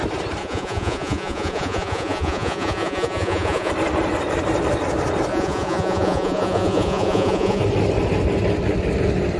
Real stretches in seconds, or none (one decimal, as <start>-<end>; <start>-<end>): 0.0-0.4; 3.7-5.3; 7.6-9.4